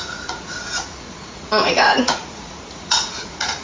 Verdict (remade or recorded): remade